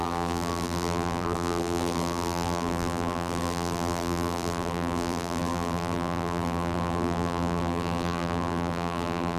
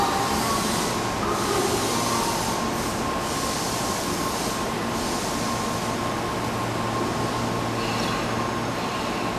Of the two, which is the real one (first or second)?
second